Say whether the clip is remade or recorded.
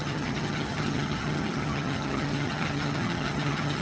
remade